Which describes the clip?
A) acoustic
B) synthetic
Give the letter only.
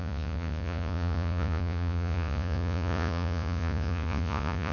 B